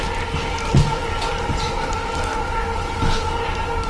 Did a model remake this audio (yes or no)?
no